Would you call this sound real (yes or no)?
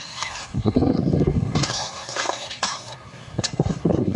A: no